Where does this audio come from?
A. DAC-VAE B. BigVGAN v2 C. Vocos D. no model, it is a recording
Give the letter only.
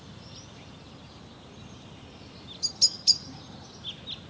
D